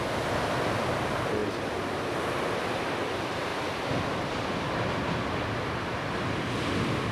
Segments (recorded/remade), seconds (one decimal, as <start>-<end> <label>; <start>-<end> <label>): 0.0-7.1 recorded